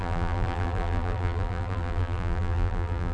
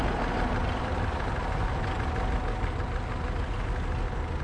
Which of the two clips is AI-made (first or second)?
first